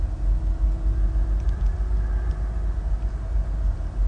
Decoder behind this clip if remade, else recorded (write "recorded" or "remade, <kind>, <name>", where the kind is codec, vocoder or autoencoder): recorded